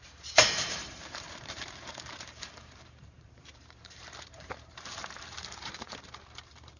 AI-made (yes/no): yes